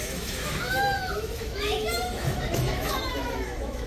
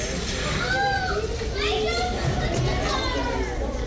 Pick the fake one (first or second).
first